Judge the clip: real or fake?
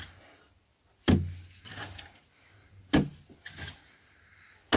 real